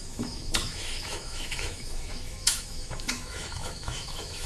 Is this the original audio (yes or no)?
no